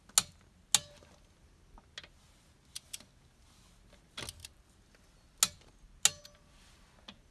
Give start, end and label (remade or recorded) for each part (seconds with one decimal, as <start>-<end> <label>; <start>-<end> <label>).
0.0-4.4 recorded; 4.4-4.9 remade; 4.9-7.3 recorded